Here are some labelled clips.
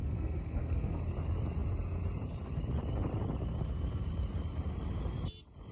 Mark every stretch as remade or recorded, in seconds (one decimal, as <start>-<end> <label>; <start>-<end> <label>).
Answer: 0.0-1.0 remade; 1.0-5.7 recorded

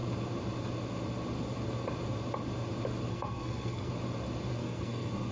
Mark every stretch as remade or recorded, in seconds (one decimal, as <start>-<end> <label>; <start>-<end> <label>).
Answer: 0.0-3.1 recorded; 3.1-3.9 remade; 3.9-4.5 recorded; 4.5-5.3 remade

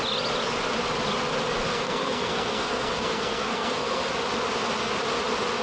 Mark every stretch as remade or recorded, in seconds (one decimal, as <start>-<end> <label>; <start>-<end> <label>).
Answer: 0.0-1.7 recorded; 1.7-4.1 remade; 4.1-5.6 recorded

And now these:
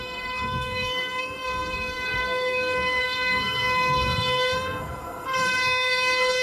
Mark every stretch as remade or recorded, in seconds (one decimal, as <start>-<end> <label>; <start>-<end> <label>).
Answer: 0.0-6.4 remade

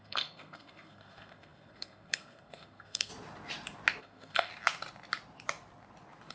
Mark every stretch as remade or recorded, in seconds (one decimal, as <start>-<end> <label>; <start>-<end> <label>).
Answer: 0.0-3.1 remade; 3.1-4.0 recorded; 4.0-4.5 remade; 4.5-6.3 recorded